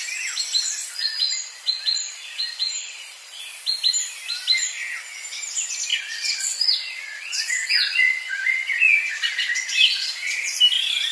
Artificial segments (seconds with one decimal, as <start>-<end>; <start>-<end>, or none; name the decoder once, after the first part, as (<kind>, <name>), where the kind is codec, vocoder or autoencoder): 0.8-3.4 (vocoder, Vocos); 5.9-10.6